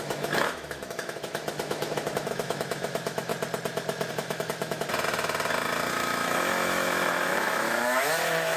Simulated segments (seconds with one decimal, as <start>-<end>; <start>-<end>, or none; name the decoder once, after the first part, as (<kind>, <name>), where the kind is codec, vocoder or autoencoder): 0.0-3.3 (autoencoder, DAC-VAE); 4.1-4.9; 5.9-8.6